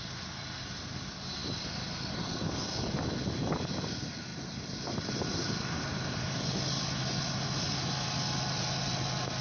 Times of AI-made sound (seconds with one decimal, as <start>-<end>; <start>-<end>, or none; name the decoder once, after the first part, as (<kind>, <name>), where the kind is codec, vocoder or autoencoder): none